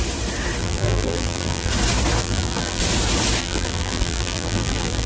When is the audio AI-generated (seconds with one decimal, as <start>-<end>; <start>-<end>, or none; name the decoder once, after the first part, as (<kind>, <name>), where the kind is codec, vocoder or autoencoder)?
0.6-1.7 (vocoder, BigVGAN v2); 2.2-2.8; 3.4-5.1